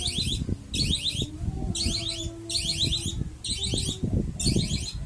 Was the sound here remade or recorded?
recorded